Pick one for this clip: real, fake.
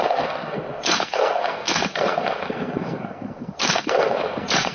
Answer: fake